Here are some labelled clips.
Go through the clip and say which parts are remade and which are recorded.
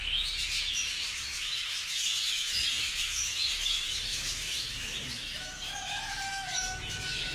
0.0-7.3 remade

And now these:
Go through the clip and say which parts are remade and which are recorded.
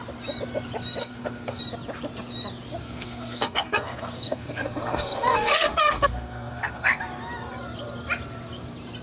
0.0-1.0 recorded; 1.0-1.6 remade; 1.6-2.8 recorded; 2.8-7.0 remade; 7.0-9.0 recorded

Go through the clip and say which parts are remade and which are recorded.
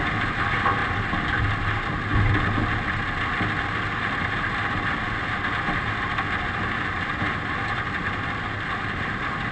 0.0-9.5 recorded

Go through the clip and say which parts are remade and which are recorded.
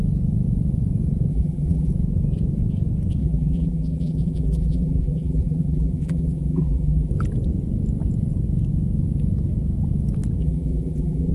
0.0-1.3 recorded; 1.3-1.9 remade; 1.9-3.2 recorded; 3.2-7.1 remade; 7.1-10.4 recorded; 10.4-11.3 remade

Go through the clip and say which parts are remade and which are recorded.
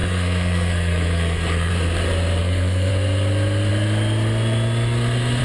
0.0-1.7 remade; 1.7-2.4 recorded; 2.4-2.9 remade; 2.9-5.4 recorded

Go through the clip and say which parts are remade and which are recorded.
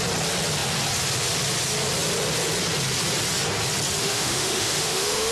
0.0-4.0 recorded; 4.0-5.3 remade